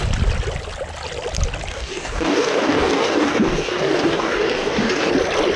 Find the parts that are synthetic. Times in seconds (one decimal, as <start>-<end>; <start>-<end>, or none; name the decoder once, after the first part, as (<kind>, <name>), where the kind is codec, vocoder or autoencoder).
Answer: 1.7-5.1 (codec, DAC)